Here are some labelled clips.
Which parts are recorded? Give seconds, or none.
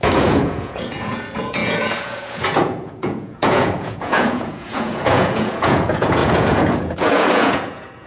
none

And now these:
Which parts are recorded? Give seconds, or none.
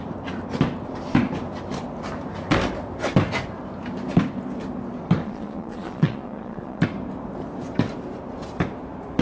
0.0-5.2; 6.8-9.2